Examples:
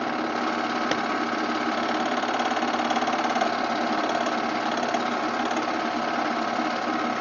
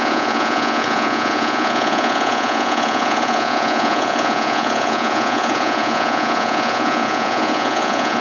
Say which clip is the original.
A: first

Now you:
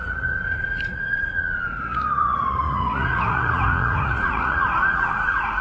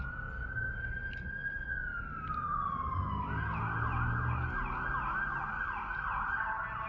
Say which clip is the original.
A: second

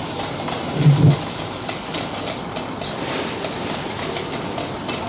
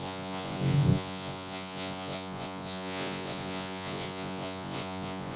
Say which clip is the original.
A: first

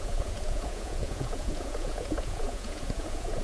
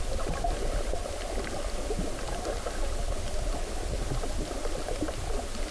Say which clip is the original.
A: second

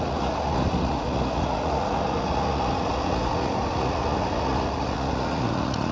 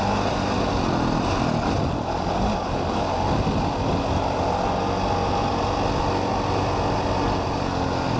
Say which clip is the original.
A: second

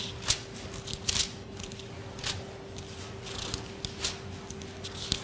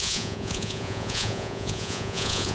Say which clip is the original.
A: first